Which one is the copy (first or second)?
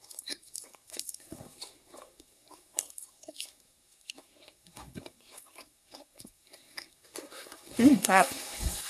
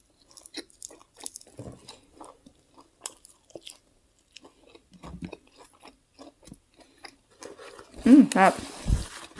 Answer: first